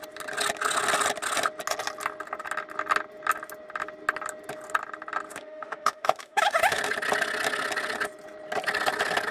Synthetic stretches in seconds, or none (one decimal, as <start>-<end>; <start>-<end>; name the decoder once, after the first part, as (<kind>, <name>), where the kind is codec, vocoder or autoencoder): 5.3-6.8 (autoencoder, DAC-VAE)